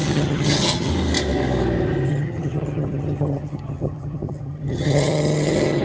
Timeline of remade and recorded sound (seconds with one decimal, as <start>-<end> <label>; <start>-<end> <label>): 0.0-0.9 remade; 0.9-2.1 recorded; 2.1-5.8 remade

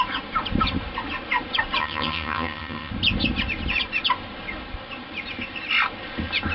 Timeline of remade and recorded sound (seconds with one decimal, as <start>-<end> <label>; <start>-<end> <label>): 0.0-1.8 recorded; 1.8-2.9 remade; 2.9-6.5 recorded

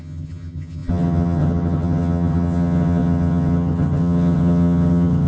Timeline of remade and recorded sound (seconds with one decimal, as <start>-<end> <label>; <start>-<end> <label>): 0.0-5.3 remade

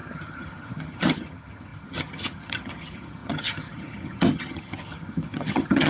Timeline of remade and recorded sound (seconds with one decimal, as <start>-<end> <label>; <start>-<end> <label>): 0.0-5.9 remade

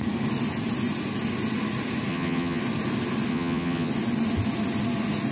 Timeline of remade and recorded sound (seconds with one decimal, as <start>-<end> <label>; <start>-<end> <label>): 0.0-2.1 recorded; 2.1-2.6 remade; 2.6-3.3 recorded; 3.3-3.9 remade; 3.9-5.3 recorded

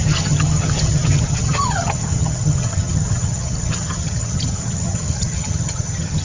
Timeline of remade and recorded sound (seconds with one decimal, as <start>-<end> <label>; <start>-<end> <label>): 0.0-6.2 remade

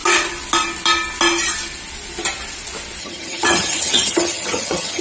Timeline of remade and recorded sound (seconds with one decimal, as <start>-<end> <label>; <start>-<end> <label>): 0.0-3.0 recorded; 3.0-5.0 remade

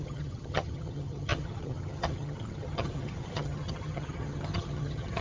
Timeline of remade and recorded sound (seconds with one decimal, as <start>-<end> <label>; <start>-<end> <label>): 0.0-5.2 remade